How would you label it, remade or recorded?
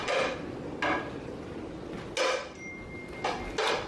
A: recorded